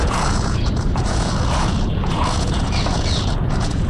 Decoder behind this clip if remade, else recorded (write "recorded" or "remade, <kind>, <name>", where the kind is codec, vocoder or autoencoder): remade, vocoder, Vocos